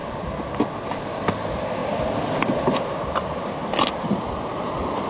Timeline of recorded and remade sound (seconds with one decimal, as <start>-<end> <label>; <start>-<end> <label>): 0.0-5.1 recorded